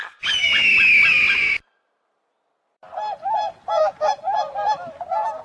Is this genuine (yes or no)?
yes